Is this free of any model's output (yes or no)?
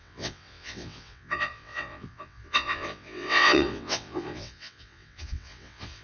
no